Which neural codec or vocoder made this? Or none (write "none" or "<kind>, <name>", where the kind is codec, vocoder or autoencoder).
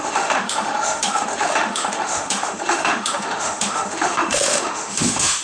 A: autoencoder, DAC-VAE